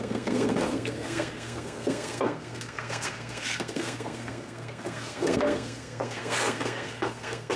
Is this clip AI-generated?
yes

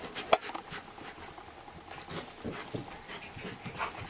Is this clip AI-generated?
no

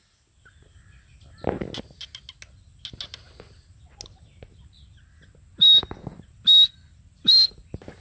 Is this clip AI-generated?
no